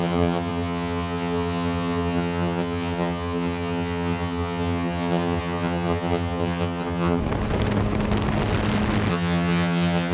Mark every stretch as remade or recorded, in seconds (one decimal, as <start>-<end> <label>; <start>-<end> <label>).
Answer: 0.0-7.2 remade; 7.2-9.1 recorded; 9.1-10.1 remade